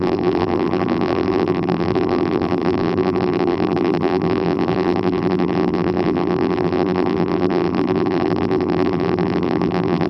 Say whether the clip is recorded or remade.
remade